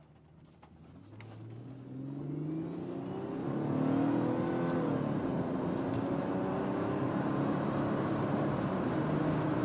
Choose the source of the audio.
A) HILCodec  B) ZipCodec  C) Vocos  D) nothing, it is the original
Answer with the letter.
D